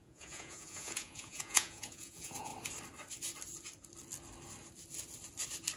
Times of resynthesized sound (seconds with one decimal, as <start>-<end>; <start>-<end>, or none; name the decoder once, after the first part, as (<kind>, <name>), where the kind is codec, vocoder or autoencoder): 0.0-2.5 (vocoder, Vocos)